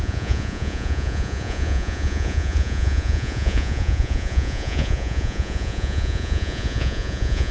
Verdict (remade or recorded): remade